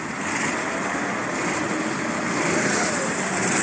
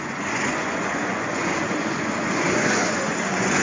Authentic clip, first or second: first